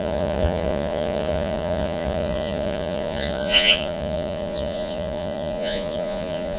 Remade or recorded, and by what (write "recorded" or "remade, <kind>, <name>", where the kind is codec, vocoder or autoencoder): remade, vocoder, Vocos